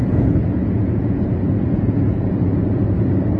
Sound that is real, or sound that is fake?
fake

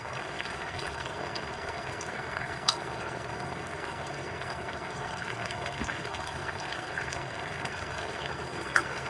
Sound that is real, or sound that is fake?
fake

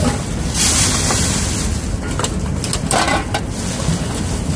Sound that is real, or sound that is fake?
real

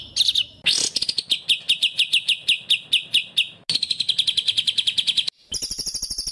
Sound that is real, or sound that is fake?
real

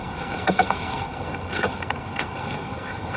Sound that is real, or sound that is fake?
fake